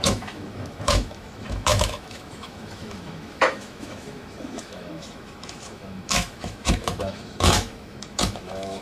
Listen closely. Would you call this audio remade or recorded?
remade